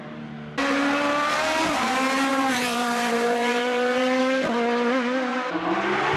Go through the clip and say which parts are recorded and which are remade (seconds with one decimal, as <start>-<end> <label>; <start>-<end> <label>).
0.0-2.3 recorded; 2.3-4.2 remade; 4.2-5.3 recorded; 5.3-6.2 remade